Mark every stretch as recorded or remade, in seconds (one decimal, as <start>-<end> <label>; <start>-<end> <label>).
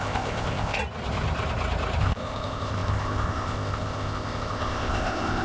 0.0-0.8 remade; 0.8-2.0 recorded; 2.0-5.4 remade